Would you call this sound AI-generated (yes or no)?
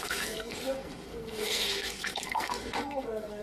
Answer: yes